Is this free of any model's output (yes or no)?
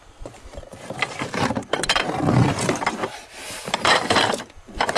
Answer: no